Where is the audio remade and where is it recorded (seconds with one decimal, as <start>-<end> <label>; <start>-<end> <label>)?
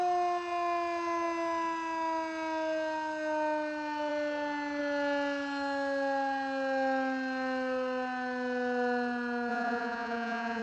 0.0-9.5 recorded; 9.5-10.6 remade